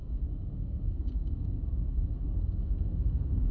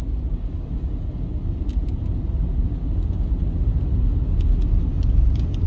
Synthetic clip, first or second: first